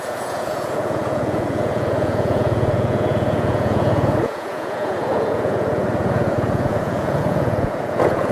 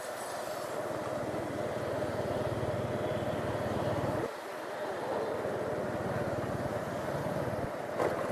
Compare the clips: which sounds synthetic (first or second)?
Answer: first